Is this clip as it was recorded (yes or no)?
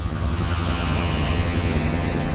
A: no